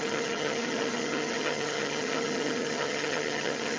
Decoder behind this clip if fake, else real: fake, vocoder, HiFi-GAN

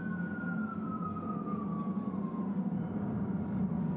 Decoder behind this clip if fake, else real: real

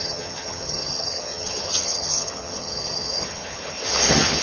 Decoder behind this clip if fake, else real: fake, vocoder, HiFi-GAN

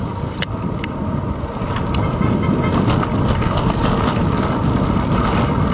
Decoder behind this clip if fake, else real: real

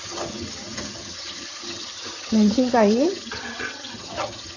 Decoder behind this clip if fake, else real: fake, vocoder, HiFi-GAN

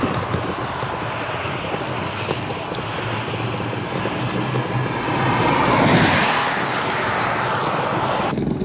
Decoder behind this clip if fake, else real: real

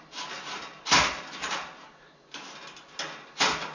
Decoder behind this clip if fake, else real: real